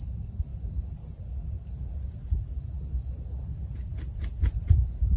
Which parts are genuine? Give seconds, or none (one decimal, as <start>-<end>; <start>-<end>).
0.0-5.2